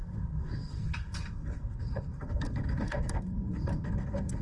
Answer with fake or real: fake